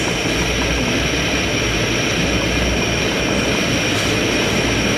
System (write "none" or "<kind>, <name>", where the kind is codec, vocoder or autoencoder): none